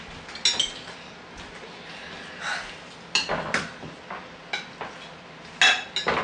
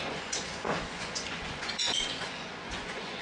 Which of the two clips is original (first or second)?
first